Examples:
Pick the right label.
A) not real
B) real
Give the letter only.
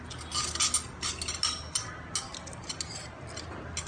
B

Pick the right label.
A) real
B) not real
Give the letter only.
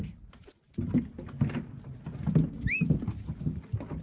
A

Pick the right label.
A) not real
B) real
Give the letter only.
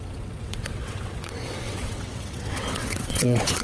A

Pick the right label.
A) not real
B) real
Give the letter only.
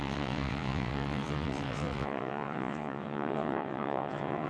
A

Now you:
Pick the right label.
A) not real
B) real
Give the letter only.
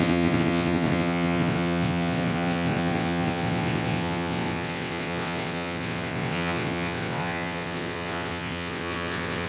A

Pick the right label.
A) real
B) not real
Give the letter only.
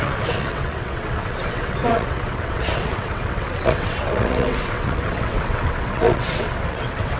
B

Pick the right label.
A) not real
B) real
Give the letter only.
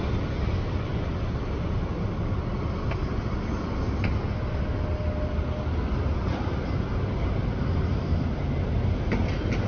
B